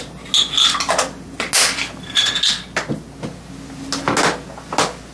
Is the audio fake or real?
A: real